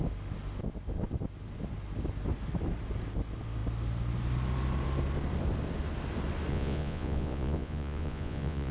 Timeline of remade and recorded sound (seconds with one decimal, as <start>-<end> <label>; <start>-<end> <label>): 0.0-6.5 recorded; 6.5-8.7 remade